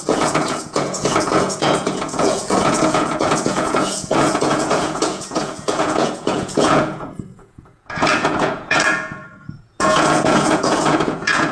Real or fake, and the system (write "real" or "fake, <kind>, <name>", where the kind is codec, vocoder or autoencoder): fake, vocoder, Vocos